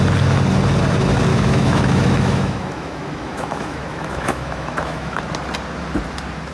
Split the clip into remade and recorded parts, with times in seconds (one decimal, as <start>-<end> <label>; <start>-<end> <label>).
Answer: 0.0-1.3 recorded; 1.3-5.2 remade; 5.2-6.5 recorded